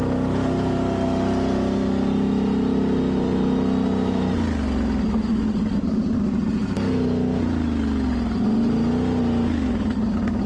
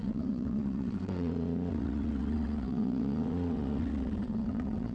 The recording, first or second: first